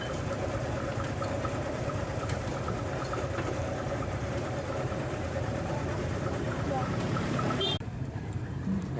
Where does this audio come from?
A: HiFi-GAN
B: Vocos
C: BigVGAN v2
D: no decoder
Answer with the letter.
C